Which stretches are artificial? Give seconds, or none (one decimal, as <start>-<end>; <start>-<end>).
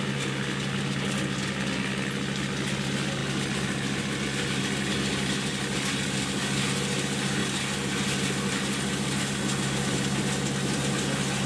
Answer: none